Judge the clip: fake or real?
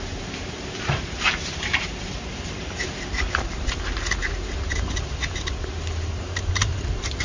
fake